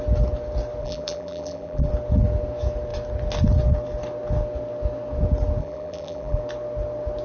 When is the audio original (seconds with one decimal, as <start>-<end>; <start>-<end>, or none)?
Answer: 0.0-0.8; 1.9-5.6; 6.4-7.2